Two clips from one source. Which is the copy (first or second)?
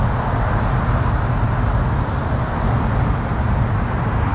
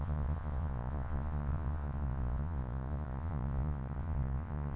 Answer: second